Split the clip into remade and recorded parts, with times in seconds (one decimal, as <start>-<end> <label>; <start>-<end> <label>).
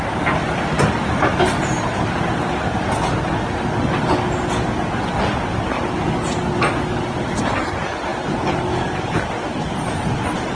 0.0-10.5 recorded